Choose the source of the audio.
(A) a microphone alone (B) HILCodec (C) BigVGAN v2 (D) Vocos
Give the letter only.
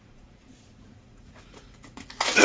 D